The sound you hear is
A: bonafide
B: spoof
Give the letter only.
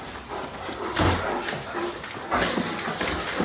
A